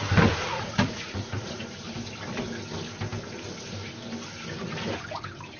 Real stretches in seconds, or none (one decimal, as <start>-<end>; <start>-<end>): 0.0-0.5; 1.6-5.6